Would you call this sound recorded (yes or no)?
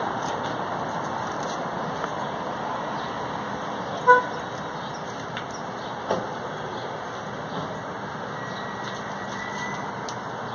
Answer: yes